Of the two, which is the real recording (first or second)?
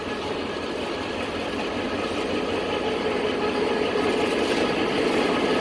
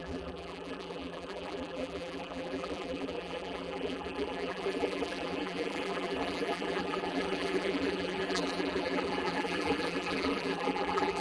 first